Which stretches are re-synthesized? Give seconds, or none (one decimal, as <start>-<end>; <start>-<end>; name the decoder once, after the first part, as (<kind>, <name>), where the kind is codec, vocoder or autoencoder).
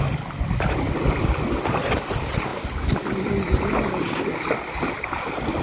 none